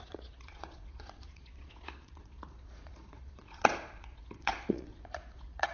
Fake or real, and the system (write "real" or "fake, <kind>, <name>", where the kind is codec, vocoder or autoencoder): fake, vocoder, Vocos